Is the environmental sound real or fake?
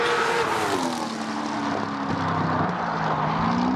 real